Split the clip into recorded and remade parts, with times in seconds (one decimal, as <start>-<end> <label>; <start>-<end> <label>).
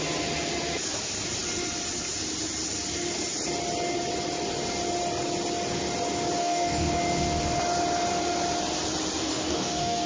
0.0-6.4 recorded; 6.4-6.9 remade; 6.9-9.2 recorded; 9.2-10.1 remade